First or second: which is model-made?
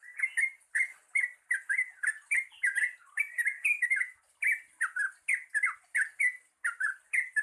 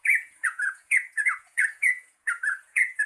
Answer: second